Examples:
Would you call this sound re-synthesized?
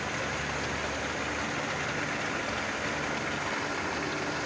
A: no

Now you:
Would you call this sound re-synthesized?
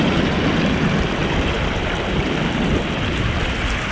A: no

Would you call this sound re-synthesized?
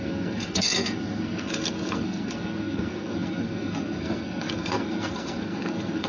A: yes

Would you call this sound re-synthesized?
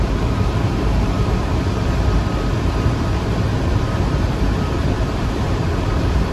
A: yes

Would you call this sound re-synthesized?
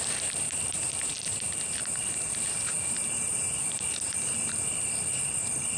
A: yes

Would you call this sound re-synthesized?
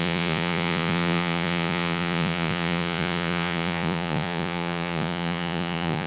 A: yes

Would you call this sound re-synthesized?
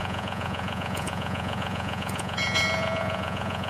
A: yes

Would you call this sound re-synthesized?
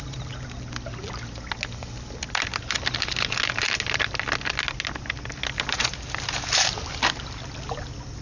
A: no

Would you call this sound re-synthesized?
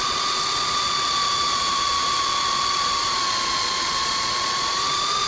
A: yes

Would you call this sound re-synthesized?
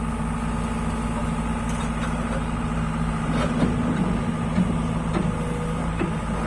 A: no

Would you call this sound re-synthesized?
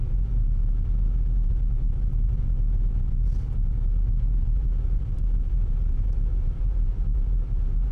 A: no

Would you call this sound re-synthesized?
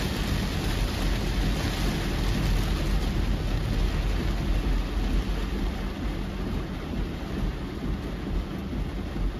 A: no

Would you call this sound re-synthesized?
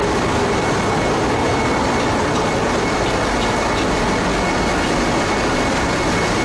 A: no